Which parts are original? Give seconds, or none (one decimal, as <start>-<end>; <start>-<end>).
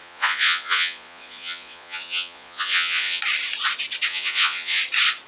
3.2-4.1; 4.8-5.3